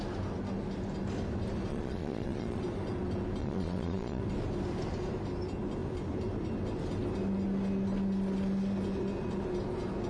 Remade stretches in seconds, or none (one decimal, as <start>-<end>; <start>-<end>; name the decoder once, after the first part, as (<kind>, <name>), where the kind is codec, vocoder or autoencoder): 1.7-2.6 (vocoder, Vocos); 3.4-4.2